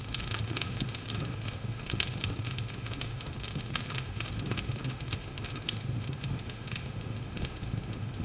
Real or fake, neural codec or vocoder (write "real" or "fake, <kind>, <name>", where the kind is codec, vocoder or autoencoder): fake, autoencoder, DAC-VAE